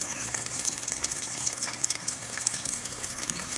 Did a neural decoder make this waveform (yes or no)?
yes